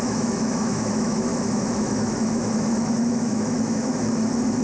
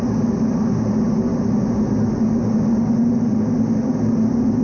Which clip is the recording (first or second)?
second